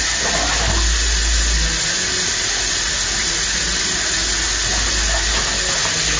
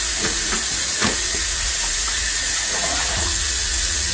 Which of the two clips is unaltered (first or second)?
first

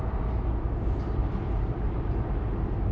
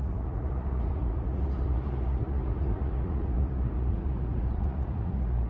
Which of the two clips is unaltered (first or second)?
first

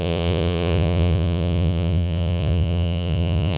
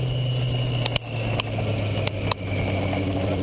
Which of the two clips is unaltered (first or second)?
second